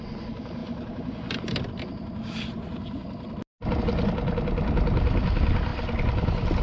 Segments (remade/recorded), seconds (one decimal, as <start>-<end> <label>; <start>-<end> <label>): 0.0-6.6 recorded